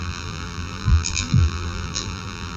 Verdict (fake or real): fake